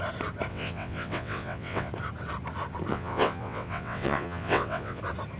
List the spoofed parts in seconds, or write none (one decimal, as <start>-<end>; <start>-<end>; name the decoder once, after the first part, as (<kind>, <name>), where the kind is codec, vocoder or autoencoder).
0.5-1.9 (vocoder, WaveNeXt); 2.9-5.0